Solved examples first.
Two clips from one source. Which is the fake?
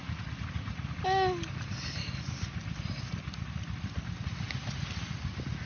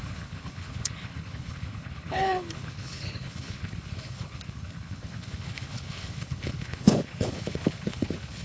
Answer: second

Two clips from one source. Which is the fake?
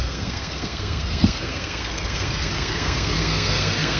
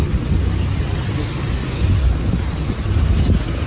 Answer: first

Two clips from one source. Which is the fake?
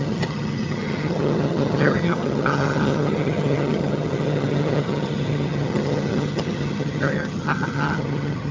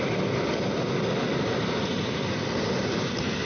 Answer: first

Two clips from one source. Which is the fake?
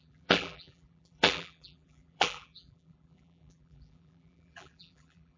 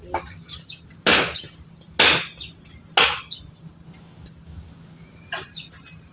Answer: first